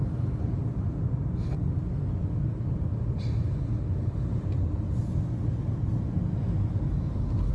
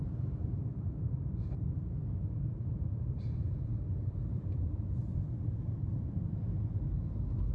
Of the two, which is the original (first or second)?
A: first